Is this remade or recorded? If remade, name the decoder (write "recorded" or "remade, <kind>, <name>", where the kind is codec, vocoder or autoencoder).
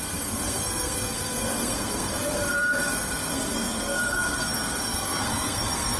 remade, codec, SNAC